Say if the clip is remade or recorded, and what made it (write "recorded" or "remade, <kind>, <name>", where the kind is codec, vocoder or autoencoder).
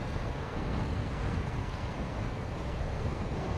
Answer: remade, codec, SNAC